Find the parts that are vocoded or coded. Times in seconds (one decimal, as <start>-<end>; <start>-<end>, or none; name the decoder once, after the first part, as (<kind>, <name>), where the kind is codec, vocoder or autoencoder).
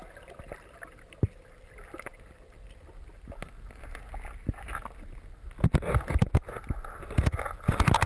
none